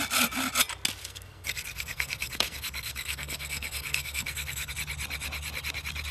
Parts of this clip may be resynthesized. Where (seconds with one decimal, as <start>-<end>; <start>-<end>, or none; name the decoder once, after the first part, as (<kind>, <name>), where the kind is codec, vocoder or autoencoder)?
1.0-4.7 (codec, SNAC)